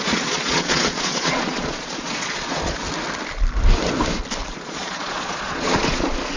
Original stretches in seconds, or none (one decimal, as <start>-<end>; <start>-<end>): 2.8-4.5